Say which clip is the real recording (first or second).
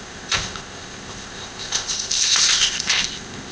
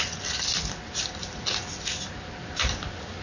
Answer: second